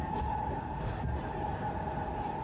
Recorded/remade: recorded